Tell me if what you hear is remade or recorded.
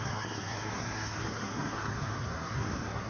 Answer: remade